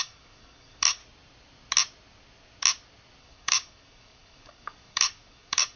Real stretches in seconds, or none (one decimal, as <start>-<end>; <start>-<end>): 1.0-3.2